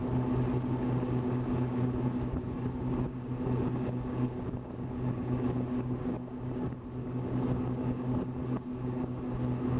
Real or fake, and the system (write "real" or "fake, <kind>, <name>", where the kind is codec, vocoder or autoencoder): fake, codec, DAC